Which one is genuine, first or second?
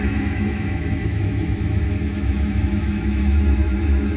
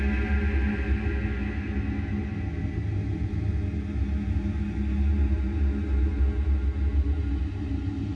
second